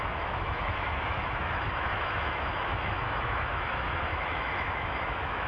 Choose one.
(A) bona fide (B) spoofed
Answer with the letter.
B